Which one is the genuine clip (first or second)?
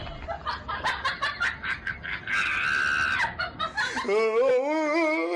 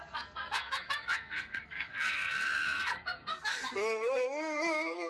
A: first